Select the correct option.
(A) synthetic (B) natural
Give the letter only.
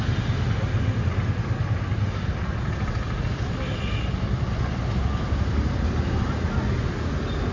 B